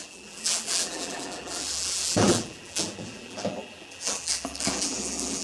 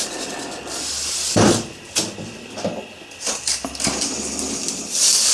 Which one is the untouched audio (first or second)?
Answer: second